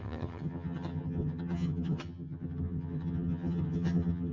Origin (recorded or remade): remade